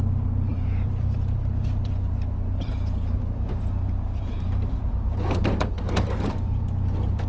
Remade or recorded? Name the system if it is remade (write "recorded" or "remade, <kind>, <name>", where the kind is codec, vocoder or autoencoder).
remade, vocoder, BigVGAN v2